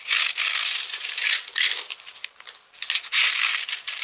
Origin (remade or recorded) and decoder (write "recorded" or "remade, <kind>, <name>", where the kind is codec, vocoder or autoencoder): recorded